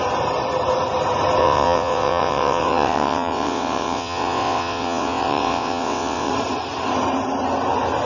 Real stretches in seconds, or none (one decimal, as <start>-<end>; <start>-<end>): 0.0-1.4; 6.3-8.1